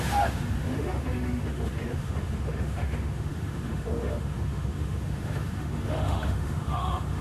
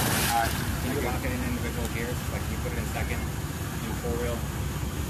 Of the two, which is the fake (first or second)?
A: first